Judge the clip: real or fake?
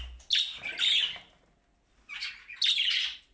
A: real